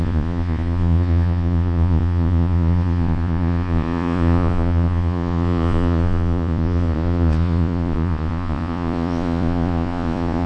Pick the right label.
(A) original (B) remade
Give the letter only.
B